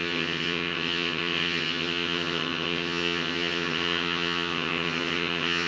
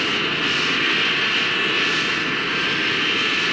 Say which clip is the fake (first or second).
first